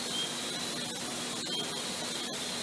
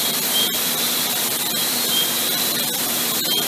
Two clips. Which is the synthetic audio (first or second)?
second